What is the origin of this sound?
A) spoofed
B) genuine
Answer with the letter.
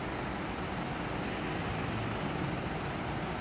B